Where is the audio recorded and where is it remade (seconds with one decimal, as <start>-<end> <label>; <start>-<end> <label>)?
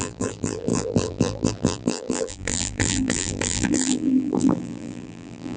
0.0-5.6 remade